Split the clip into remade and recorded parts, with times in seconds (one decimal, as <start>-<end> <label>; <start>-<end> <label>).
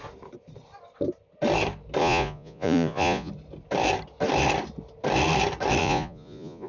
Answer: 0.0-2.0 recorded; 2.0-3.3 remade; 3.3-5.8 recorded; 5.8-6.7 remade